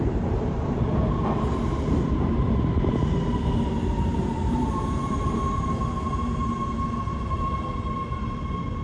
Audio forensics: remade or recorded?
remade